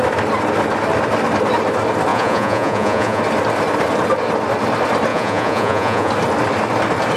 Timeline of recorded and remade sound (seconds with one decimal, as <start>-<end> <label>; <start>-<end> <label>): 0.0-2.1 recorded; 2.1-3.2 remade; 3.2-5.1 recorded; 5.1-6.1 remade; 6.1-7.2 recorded